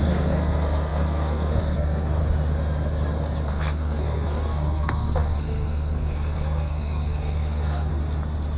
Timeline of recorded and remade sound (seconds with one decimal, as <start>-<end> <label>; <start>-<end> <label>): 0.0-2.2 remade; 2.2-3.5 recorded; 3.5-7.9 remade; 7.9-8.6 recorded